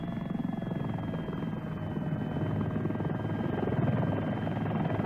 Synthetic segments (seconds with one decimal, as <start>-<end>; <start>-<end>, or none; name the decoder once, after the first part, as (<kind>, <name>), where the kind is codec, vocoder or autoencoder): none